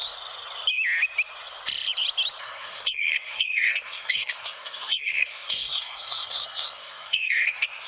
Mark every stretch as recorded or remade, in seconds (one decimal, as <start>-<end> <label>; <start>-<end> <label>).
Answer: 0.0-2.4 recorded; 2.4-7.9 remade